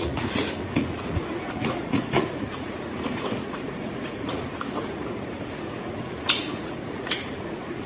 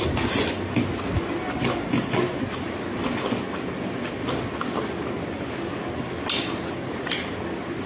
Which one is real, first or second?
second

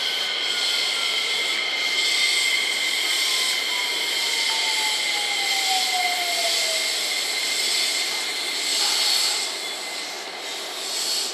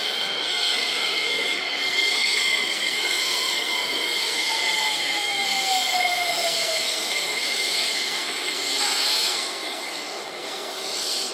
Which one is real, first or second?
first